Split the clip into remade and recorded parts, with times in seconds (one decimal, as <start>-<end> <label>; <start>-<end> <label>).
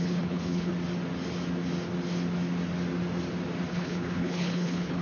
0.0-0.7 remade; 0.7-3.7 recorded; 3.7-5.0 remade